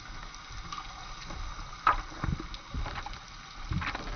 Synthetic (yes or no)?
no